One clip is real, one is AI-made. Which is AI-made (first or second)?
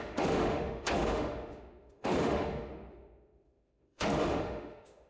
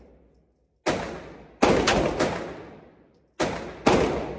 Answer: first